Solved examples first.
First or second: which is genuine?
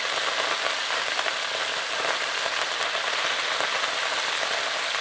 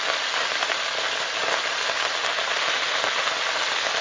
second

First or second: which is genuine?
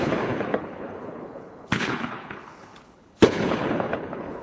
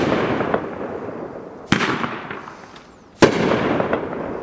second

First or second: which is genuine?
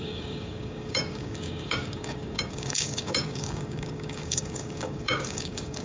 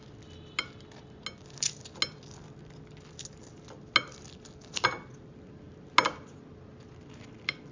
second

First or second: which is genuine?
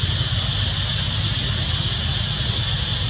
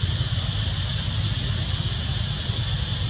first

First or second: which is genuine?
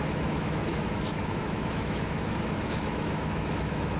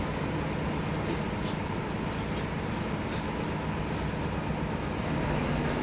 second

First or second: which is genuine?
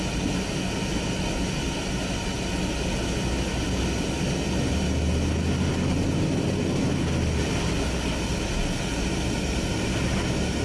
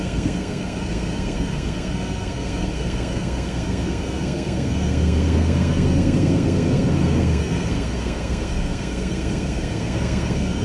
first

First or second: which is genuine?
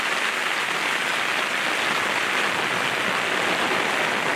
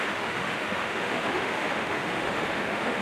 first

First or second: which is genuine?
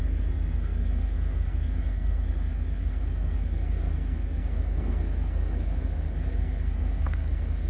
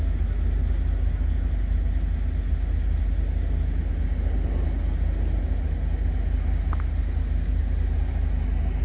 second